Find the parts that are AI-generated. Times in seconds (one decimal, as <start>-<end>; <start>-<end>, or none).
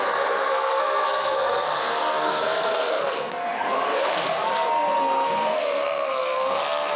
0.0-7.0